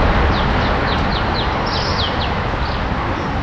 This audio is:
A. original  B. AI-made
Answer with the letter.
A